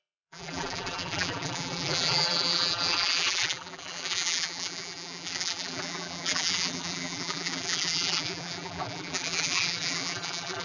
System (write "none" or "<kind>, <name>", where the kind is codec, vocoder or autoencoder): vocoder, BigVGAN v2